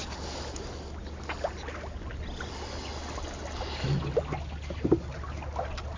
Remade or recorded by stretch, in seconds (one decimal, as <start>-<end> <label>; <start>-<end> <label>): 0.0-6.0 recorded